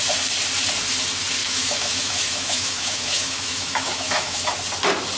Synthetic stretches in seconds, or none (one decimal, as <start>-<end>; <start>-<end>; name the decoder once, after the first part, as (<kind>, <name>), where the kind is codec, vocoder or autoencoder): 1.4-4.5 (autoencoder, DAC-VAE)